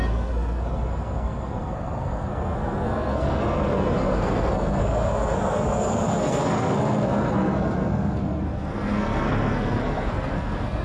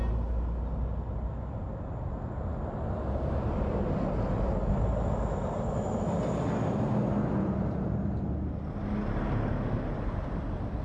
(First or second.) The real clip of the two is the second